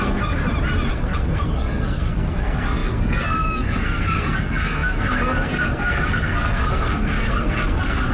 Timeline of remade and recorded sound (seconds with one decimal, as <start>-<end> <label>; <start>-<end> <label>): 0.0-0.4 remade; 0.4-0.9 recorded; 0.9-8.1 remade